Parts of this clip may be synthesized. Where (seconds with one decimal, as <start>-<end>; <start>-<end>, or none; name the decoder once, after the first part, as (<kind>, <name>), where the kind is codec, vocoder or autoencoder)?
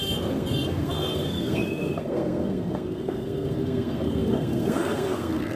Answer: 0.0-5.6 (codec, SNAC)